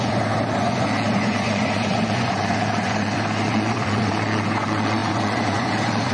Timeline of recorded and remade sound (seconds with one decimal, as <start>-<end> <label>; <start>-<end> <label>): 0.0-6.1 remade